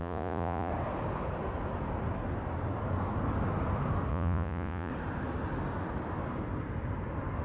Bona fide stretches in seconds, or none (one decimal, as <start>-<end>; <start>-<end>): 0.7-4.1; 4.9-7.4